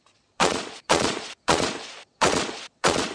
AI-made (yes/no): yes